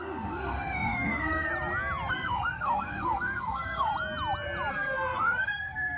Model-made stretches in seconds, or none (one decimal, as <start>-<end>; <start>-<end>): 0.0-1.5; 2.1-3.9; 4.7-6.0